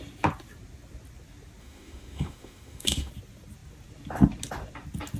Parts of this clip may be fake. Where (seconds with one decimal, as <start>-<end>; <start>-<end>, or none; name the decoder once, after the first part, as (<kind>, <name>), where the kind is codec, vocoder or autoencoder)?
1.6-3.1 (autoencoder, DAC-VAE)